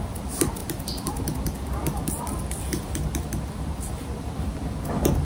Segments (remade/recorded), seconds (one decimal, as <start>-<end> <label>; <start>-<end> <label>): 0.0-0.6 recorded; 0.6-2.6 remade; 2.6-5.2 recorded